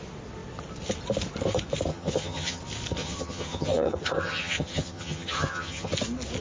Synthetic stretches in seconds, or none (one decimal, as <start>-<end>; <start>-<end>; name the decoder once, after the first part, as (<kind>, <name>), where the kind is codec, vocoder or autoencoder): 1.9-2.6 (vocoder, HiFi-GAN); 3.0-5.9